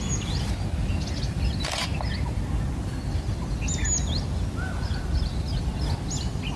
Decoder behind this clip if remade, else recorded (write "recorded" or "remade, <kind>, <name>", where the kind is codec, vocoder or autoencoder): recorded